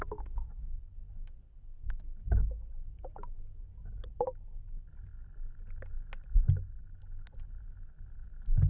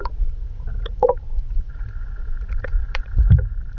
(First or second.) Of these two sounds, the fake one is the second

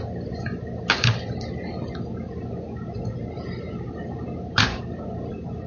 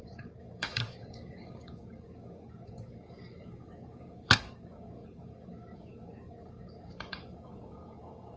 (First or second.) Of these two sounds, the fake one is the second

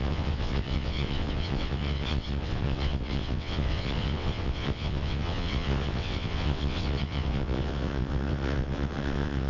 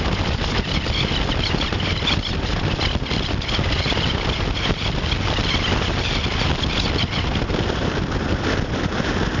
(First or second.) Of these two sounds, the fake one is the first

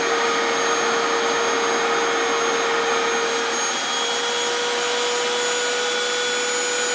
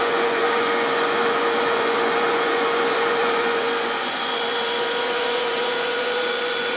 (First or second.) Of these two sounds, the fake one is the second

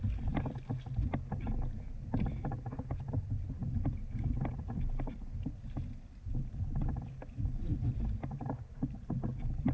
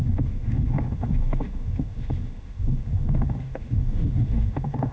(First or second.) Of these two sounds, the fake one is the second